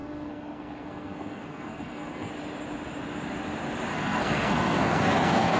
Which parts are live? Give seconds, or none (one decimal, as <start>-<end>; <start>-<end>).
2.3-3.9